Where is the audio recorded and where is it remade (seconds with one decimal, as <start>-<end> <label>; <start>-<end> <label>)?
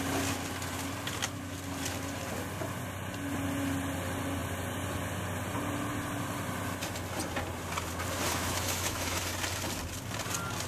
0.0-8.3 recorded; 8.3-9.2 remade; 9.2-10.7 recorded